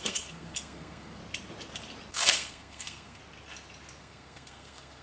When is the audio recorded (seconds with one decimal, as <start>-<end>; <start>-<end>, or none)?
1.2-2.1; 3.2-4.0